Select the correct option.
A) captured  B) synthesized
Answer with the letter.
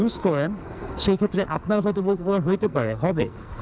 B